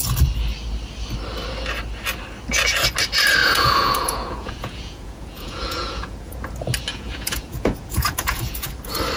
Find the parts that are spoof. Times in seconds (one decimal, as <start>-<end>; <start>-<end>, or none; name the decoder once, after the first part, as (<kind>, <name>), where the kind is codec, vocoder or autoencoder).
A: 3.4-6.3 (vocoder, Vocos); 6.9-8.7